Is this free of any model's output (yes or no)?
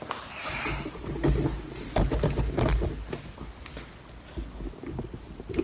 yes